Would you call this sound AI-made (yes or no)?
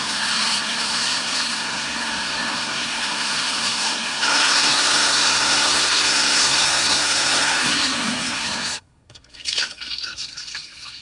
yes